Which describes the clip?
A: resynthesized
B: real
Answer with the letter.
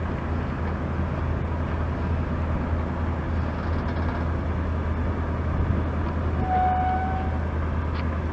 B